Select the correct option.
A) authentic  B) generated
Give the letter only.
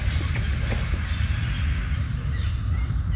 A